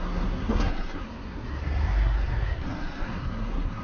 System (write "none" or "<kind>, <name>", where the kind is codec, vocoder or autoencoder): codec, SNAC